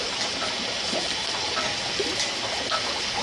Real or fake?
real